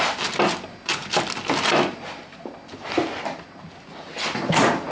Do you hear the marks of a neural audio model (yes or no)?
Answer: no